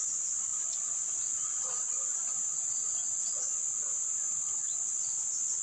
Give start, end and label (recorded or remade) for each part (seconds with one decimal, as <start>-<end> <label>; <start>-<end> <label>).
0.0-5.6 recorded